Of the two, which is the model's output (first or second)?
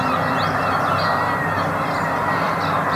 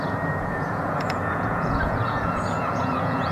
second